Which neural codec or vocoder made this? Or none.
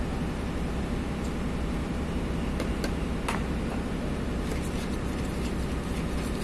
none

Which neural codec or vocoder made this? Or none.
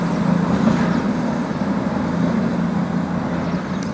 none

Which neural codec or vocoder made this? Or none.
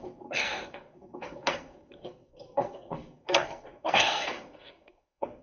codec, SNAC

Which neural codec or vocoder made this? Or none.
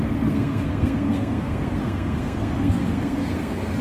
codec, SNAC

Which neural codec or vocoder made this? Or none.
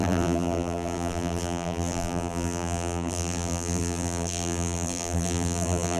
vocoder, BigVGAN v2